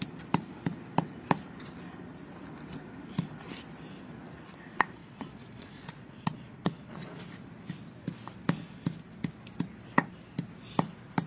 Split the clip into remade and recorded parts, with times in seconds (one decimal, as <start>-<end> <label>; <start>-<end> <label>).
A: 0.0-5.0 recorded; 5.0-7.2 remade; 7.2-11.3 recorded